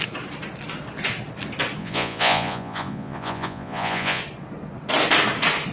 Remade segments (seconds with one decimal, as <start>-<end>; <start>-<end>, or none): 1.8-4.2